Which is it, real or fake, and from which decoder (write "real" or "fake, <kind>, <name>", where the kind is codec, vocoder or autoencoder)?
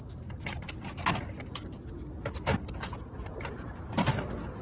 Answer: real